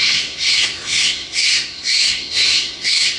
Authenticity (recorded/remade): remade